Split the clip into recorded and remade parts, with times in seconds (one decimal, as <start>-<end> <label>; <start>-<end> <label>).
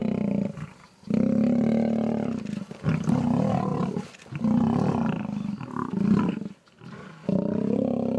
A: 0.0-8.2 recorded